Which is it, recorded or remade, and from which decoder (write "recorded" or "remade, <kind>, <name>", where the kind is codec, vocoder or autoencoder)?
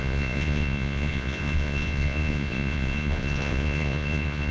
remade, vocoder, Vocos